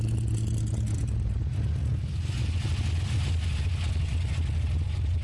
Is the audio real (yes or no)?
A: yes